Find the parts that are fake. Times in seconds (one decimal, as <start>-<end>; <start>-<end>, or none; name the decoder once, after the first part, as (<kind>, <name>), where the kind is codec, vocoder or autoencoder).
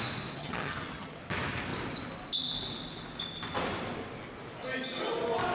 0.4-1.2 (vocoder, HiFi-GAN)